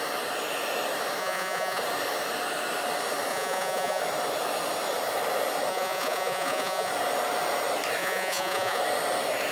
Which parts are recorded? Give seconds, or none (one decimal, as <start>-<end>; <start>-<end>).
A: 0.0-1.2; 1.8-3.3; 4.0-5.7; 6.9-8.0; 8.8-9.5

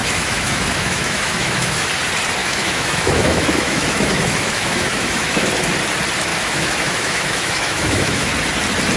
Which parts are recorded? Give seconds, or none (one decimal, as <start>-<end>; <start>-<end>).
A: 1.9-2.4; 5.5-6.3; 8.3-9.0